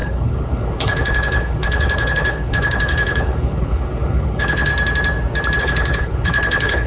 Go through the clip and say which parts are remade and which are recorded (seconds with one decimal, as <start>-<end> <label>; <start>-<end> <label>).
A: 0.0-4.7 remade; 4.7-5.6 recorded; 5.6-6.9 remade